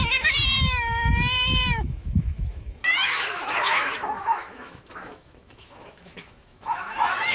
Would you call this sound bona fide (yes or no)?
no